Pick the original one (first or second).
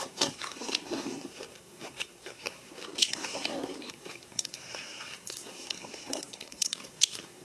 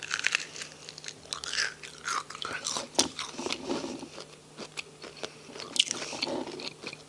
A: second